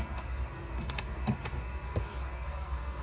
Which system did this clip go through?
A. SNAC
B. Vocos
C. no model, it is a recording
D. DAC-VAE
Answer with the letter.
A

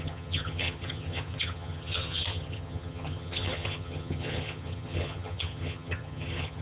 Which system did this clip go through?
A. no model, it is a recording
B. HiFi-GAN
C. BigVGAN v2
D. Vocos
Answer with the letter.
B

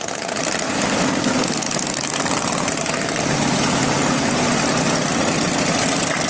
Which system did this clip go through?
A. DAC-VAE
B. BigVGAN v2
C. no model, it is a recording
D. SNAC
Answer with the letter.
C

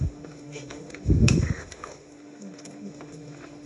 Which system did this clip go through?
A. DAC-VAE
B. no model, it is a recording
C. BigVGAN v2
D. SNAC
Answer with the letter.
A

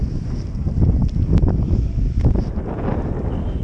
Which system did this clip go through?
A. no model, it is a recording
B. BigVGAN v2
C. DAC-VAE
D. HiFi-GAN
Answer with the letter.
A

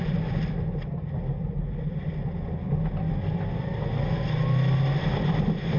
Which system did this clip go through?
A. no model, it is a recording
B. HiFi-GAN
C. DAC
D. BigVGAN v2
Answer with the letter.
A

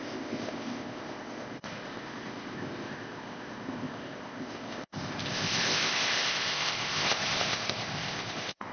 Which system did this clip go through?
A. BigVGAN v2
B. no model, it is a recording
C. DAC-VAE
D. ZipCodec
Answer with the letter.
D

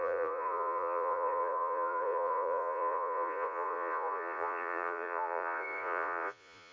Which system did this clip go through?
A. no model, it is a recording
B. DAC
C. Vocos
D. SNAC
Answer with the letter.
C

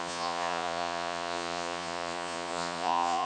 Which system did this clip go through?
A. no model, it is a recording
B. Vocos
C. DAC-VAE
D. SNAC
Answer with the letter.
B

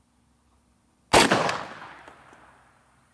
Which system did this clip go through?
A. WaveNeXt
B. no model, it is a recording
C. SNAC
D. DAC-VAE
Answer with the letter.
B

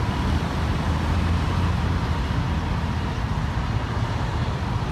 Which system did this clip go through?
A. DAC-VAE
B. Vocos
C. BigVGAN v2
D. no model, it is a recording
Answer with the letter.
D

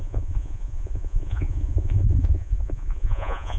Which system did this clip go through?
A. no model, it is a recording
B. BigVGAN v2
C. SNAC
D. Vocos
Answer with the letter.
D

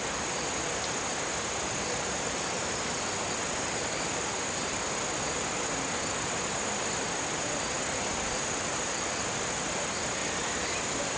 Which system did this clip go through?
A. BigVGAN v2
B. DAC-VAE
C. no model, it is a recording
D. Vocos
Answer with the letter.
A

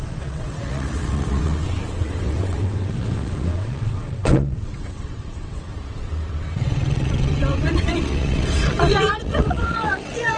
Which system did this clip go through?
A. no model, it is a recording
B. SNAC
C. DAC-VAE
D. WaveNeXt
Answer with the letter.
D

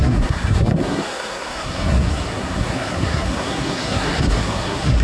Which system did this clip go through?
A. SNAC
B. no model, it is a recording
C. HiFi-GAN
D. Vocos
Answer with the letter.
A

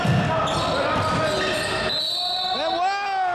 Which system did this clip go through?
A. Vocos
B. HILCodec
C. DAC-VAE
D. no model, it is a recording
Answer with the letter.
D